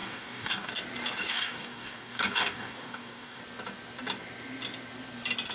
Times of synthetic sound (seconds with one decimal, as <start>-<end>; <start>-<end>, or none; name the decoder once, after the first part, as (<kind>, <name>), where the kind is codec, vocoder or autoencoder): 0.0-0.7 (codec, DAC); 1.3-3.4